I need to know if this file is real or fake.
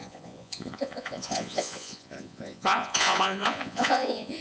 fake